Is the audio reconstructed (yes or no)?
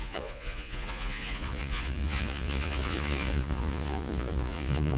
yes